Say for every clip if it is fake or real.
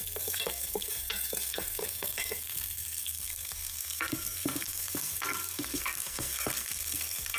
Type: fake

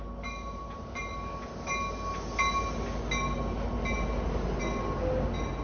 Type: real